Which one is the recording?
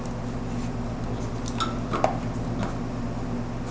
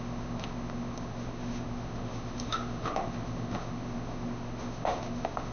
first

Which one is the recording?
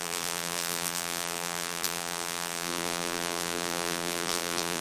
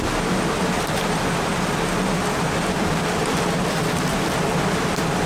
second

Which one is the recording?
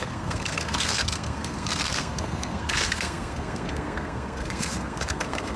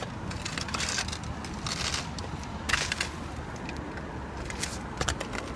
second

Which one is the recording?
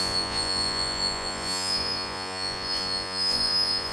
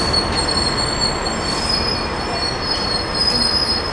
second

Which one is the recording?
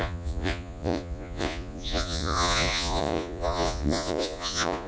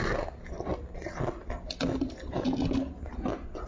second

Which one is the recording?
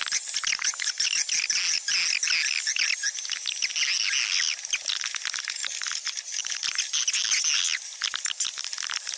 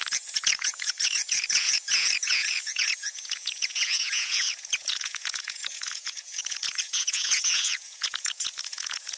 first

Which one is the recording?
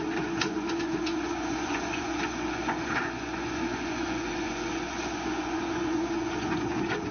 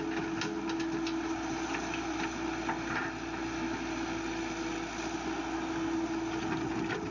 second